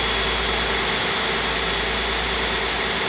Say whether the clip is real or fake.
real